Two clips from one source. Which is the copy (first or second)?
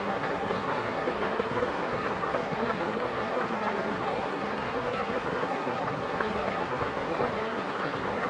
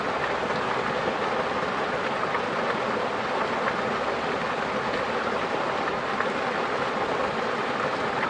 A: first